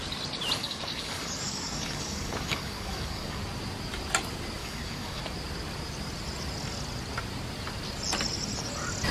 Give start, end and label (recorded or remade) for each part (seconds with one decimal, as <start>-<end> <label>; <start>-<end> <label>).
0.0-0.6 recorded; 0.6-3.4 remade; 3.4-4.6 recorded; 4.6-5.2 remade; 5.2-9.1 recorded